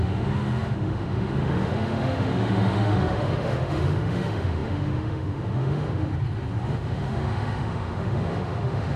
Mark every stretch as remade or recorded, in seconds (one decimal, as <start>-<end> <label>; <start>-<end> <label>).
0.0-6.1 remade; 6.1-6.7 recorded; 6.7-9.0 remade